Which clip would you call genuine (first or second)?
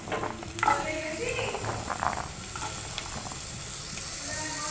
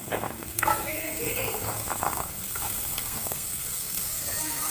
first